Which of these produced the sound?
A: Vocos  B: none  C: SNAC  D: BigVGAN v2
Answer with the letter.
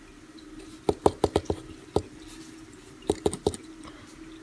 B